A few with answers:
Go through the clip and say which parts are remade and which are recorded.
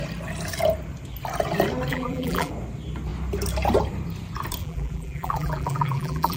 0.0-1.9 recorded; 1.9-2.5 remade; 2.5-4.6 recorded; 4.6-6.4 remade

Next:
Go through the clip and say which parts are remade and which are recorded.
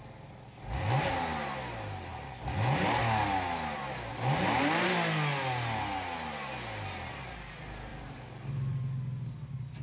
0.0-7.9 recorded; 7.9-8.8 remade; 8.8-9.8 recorded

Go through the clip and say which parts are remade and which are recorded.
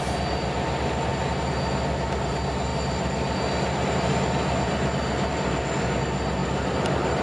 0.0-6.4 recorded; 6.4-7.2 remade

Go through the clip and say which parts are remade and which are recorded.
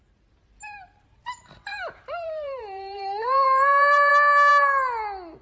0.0-1.7 recorded; 1.7-4.1 remade; 4.1-5.4 recorded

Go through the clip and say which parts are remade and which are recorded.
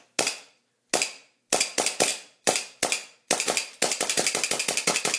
0.0-2.1 recorded; 2.1-2.8 remade; 2.8-5.2 recorded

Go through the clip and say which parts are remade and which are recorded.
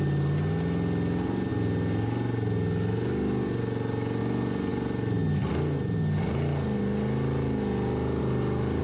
0.0-8.8 recorded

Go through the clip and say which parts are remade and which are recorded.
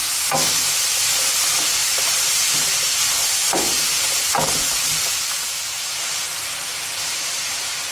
0.0-1.9 recorded; 1.9-3.6 remade; 3.6-6.7 recorded; 6.7-7.4 remade; 7.4-7.9 recorded